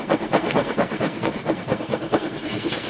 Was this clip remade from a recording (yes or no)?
yes